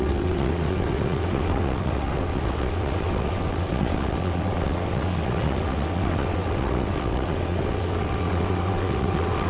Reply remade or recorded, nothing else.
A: remade